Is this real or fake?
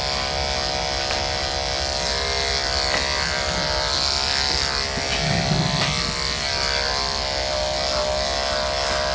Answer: real